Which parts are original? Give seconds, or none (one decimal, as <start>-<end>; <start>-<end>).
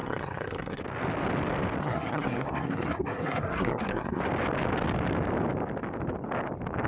0.8-1.8; 4.2-6.9